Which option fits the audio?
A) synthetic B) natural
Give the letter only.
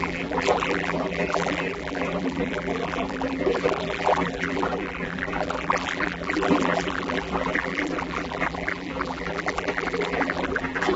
A